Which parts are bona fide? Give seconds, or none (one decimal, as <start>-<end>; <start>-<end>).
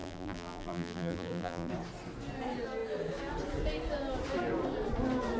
1.7-5.4